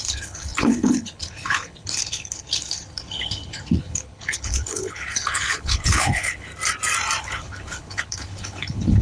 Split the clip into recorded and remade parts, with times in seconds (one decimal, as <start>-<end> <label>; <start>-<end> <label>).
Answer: 0.0-6.5 remade; 6.5-7.2 recorded; 7.2-9.0 remade